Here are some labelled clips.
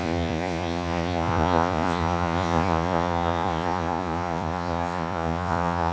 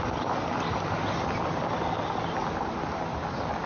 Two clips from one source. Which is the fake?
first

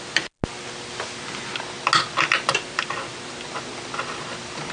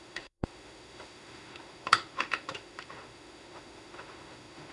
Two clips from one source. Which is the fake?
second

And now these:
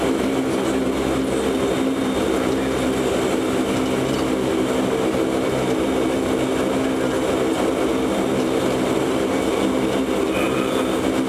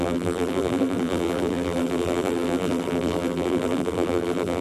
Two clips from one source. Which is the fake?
second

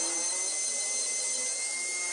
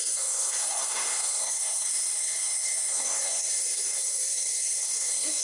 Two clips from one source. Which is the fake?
second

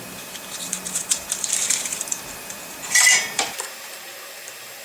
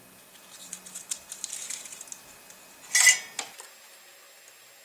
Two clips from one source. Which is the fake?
first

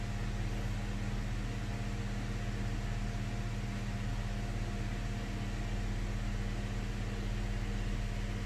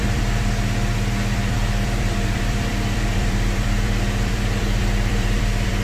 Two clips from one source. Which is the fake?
second